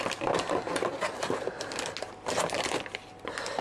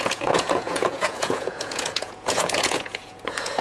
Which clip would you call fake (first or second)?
second